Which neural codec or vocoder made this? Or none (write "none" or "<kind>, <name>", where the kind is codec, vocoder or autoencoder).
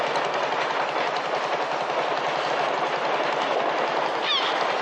none